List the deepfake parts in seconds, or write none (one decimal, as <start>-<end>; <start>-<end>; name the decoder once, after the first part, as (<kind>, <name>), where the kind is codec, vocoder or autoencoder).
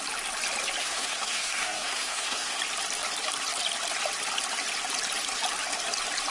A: 0.8-2.6 (codec, SNAC)